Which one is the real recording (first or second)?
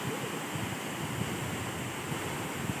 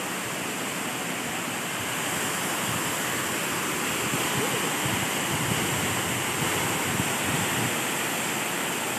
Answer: second